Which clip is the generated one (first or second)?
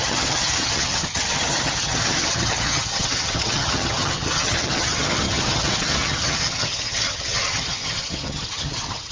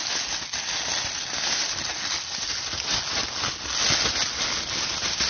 first